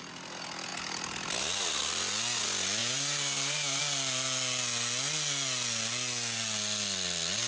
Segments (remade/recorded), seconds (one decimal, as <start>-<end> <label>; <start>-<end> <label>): 0.0-2.8 recorded; 2.8-3.8 remade; 3.8-7.5 recorded